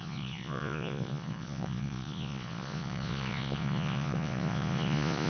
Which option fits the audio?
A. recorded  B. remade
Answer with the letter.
B